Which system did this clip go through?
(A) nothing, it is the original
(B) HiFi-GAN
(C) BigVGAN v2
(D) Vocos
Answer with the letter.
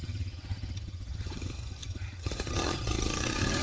B